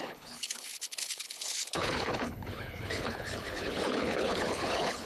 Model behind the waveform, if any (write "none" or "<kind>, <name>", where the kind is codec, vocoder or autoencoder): codec, HILCodec